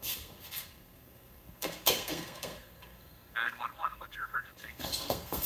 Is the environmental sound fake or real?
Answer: fake